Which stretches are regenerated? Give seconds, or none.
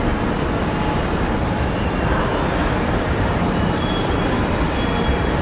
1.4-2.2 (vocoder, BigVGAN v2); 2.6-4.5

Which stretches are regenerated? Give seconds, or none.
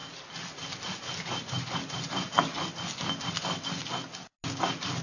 none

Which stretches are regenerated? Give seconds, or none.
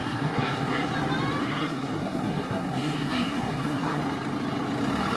0.0-0.9 (codec, SNAC); 1.4-4.0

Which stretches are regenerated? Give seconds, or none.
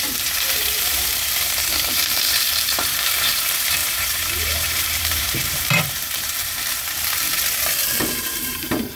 0.0-7.3 (vocoder, BigVGAN v2); 8.1-8.9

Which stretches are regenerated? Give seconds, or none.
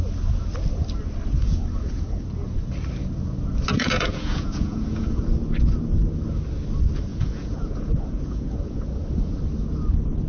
1.4-2.3 (vocoder, Vocos); 3.7-5.2; 7.1-9.3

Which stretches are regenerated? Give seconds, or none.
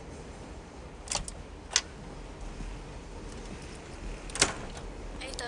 none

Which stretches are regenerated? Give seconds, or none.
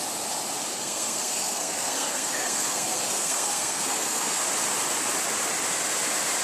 0.7-4.4 (codec, SNAC)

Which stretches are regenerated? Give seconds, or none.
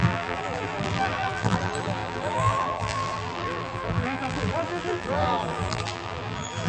0.0-6.7 (vocoder, BigVGAN v2)